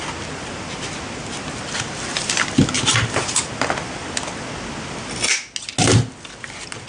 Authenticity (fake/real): real